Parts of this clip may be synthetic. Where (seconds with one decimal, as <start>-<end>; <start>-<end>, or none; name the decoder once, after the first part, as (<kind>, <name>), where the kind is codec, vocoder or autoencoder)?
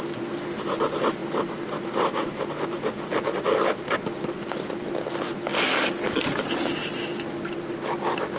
1.2-2.4 (vocoder, BigVGAN v2)